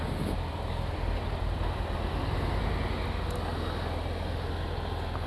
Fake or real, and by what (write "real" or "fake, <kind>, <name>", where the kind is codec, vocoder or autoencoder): real